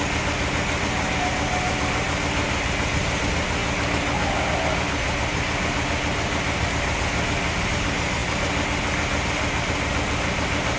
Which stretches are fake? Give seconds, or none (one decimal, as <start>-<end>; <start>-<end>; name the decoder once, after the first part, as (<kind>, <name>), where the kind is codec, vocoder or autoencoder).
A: none